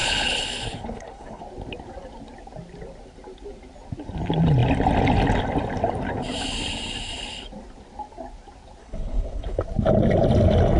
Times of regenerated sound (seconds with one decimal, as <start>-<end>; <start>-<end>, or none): 0.0-1.4; 8.8-9.6